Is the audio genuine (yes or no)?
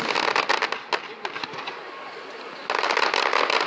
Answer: yes